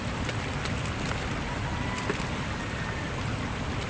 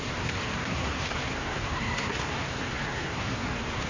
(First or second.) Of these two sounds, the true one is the first